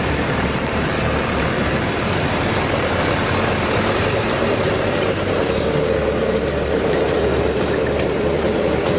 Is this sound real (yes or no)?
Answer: no